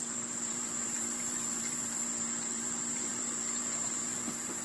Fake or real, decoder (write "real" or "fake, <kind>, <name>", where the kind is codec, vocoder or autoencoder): fake, vocoder, BigVGAN v2